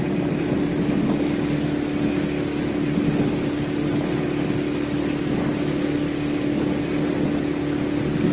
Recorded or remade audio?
recorded